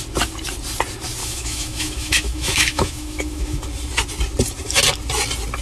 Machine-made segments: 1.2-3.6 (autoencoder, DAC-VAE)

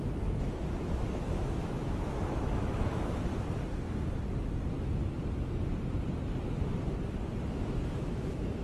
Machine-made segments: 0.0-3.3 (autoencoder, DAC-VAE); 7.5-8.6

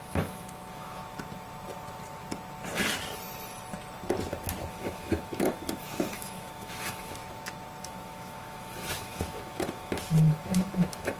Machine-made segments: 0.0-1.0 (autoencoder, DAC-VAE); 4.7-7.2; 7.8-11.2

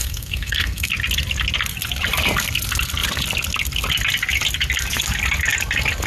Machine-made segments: 0.0-0.9 (codec, SNAC)

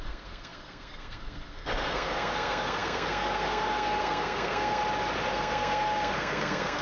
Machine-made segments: 0.0-4.8 (codec, SNAC); 5.3-6.8